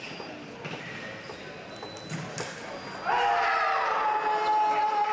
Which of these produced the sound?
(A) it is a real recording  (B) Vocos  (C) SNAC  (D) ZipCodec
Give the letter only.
A